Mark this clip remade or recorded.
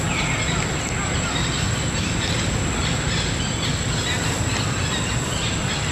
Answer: recorded